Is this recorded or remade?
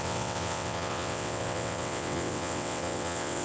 remade